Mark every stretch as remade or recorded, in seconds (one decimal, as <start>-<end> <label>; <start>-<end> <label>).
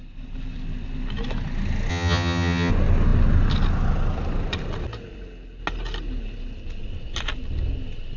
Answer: 0.0-1.9 recorded; 1.9-2.7 remade; 2.7-8.2 recorded